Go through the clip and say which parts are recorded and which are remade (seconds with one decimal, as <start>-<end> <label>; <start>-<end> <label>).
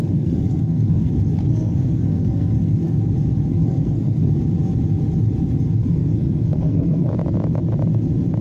0.0-1.1 remade; 1.1-1.5 recorded; 1.5-3.0 remade; 3.0-3.5 recorded; 3.5-4.3 remade; 4.3-5.8 recorded; 5.8-7.1 remade; 7.1-8.4 recorded